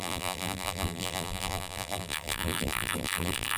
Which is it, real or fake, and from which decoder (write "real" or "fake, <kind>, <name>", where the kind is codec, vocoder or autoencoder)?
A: fake, vocoder, BigVGAN v2